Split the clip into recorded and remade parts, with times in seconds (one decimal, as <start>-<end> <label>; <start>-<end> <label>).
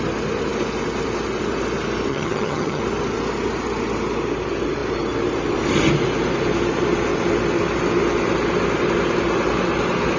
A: 0.0-2.1 recorded; 2.1-2.8 remade; 2.8-10.2 recorded